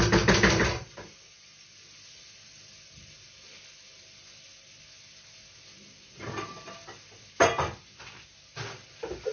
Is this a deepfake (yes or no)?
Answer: no